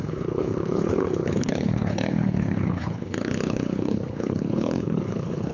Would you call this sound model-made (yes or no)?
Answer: yes